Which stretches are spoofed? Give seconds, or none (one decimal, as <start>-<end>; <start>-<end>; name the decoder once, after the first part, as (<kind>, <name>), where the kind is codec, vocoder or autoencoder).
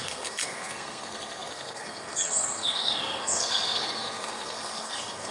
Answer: 0.0-5.3 (codec, SNAC)